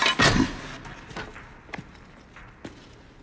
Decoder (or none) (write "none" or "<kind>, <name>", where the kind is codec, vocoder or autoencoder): none